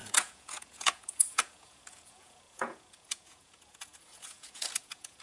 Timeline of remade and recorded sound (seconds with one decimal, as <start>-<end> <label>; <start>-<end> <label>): 0.0-5.2 remade